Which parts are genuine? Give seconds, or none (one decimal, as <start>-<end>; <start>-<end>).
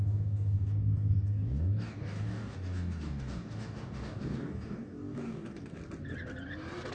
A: 5.8-6.9